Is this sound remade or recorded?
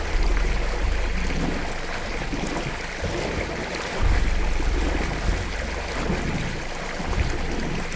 recorded